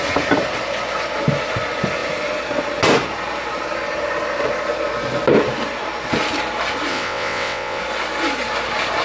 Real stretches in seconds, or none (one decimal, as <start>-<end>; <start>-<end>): 0.0-6.9; 7.8-9.0